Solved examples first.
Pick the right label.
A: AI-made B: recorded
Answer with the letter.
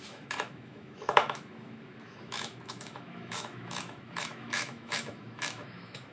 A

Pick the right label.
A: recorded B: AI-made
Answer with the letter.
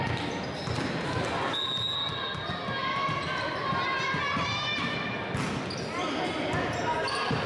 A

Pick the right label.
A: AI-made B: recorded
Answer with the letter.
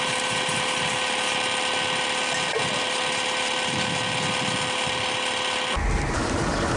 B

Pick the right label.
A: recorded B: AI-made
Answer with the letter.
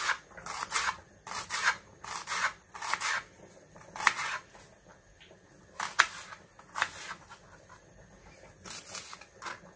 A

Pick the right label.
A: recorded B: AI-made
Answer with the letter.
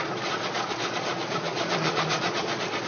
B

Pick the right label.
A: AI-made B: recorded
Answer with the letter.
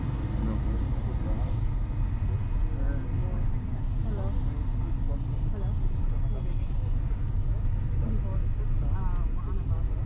B